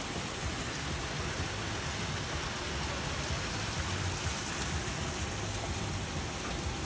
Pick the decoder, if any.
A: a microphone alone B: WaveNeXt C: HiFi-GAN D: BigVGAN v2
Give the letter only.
A